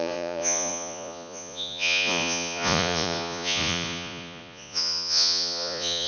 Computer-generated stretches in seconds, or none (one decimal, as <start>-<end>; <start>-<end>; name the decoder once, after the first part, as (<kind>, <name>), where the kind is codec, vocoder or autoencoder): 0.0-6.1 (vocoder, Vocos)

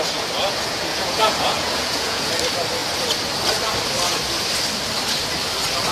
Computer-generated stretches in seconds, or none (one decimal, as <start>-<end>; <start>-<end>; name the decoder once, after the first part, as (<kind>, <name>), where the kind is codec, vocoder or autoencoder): 0.9-2.3 (vocoder, Vocos)

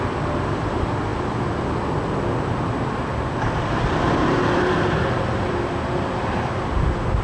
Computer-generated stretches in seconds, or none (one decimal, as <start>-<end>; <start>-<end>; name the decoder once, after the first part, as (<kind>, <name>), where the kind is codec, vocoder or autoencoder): none

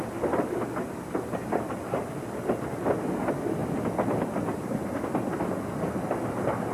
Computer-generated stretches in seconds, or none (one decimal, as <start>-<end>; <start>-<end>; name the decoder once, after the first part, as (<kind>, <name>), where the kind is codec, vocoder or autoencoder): none

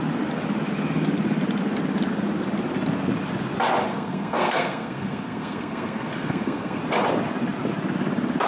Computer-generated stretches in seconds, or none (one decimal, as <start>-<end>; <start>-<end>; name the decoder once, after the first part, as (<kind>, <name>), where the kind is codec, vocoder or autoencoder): 3.9-6.8 (codec, SNAC)

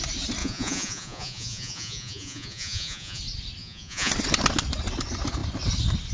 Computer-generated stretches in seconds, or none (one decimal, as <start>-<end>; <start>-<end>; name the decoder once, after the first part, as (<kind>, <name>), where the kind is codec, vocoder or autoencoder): 0.4-3.2 (vocoder, Vocos); 3.6-4.1